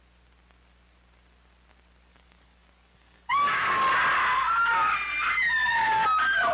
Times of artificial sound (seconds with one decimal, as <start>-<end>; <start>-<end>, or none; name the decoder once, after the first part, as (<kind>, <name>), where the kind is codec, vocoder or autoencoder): 2.1-3.8 (codec, DAC)